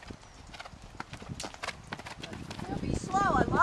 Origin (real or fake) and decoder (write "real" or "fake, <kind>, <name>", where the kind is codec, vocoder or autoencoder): real